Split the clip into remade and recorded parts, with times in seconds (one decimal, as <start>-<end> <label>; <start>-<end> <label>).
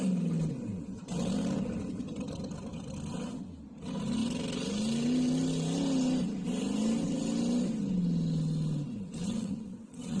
0.0-9.2 recorded; 9.2-10.2 remade